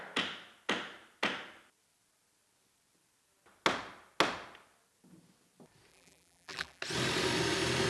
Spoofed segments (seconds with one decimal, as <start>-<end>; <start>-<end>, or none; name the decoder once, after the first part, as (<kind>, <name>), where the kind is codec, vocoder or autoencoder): 5.9-6.8 (vocoder, BigVGAN v2)